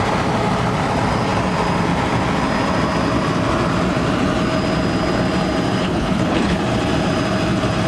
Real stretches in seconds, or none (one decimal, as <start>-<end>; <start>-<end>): 0.0-5.8; 6.6-7.9